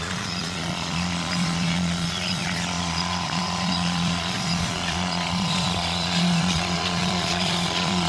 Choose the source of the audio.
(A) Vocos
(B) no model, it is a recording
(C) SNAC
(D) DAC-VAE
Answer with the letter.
A